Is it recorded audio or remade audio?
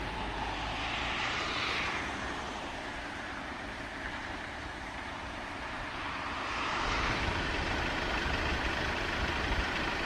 remade